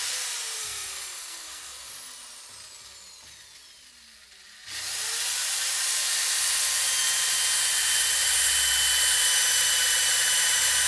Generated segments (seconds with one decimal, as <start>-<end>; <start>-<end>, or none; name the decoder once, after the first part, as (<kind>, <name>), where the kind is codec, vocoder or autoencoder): 0.6-1.9 (codec, SNAC)

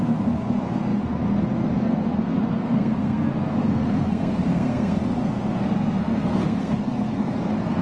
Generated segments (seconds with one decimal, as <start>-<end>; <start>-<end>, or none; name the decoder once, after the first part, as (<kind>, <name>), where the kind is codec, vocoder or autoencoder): 0.0-7.8 (codec, SNAC)

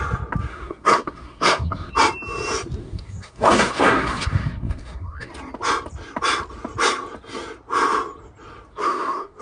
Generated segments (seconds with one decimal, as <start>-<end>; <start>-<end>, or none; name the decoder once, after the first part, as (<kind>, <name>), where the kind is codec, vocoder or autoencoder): 0.5-1.9 (codec, SNAC); 2.8-5.3; 8.7-9.4

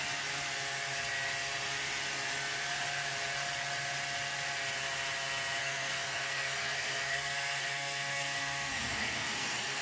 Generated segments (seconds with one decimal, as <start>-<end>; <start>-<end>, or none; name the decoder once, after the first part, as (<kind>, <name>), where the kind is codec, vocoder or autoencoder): 5.6-9.8 (codec, SNAC)

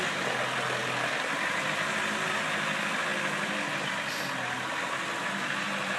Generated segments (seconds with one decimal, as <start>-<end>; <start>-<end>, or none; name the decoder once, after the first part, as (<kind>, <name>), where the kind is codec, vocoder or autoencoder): none

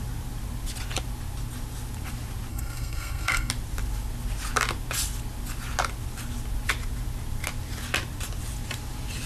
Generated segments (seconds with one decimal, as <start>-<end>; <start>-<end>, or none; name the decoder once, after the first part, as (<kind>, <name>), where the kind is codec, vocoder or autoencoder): 2.5-3.5 (codec, SNAC)

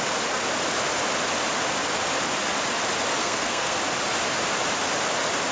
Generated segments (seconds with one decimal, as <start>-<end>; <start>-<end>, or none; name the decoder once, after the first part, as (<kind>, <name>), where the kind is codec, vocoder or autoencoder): 3.2-3.8 (codec, SNAC)